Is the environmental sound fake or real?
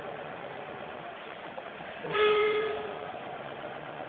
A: fake